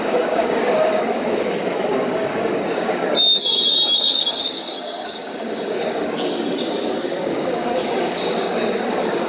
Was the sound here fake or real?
fake